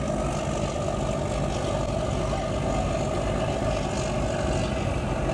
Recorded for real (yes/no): yes